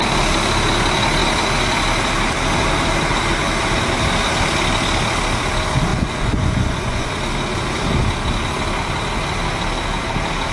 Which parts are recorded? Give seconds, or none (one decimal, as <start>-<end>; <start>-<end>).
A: 0.0-5.9; 7.1-10.5